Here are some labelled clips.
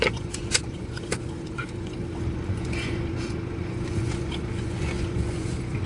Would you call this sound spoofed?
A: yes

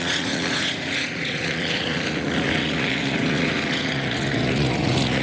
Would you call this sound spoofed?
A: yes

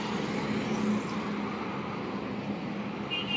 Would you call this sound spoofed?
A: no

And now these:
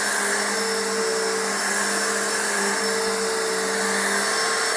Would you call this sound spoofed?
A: no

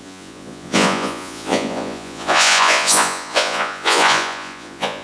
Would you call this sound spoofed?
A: yes